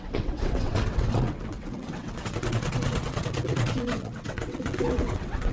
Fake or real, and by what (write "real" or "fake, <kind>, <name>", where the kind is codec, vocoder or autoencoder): fake, vocoder, WaveNeXt